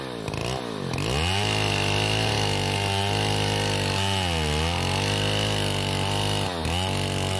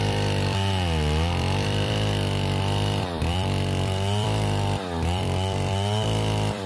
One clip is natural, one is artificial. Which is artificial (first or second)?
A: second